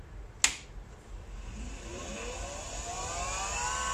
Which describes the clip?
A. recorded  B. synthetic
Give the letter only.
A